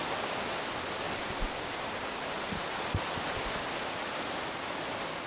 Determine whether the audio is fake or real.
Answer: real